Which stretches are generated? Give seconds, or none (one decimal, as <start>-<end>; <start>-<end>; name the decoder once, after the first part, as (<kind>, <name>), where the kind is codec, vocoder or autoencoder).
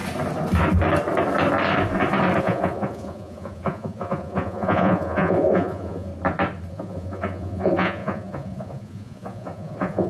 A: 2.4-6.1 (vocoder, Vocos); 6.7-10.1